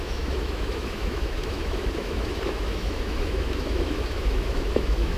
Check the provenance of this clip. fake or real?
fake